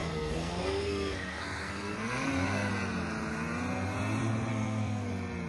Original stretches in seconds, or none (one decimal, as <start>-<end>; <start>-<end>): 2.7-4.5; 5.1-5.5